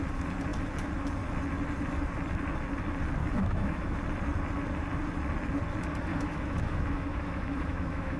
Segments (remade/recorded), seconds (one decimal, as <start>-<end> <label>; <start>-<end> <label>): 0.0-3.2 recorded; 3.2-4.0 remade; 4.0-6.1 recorded; 6.1-8.2 remade